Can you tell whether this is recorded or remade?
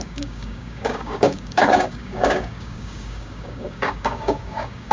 remade